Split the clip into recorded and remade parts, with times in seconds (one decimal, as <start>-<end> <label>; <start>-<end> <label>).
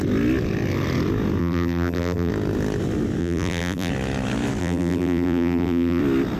0.0-1.4 recorded; 1.4-2.3 remade; 2.3-3.2 recorded; 3.2-3.9 remade; 3.9-4.6 recorded; 4.6-6.0 remade; 6.0-6.4 recorded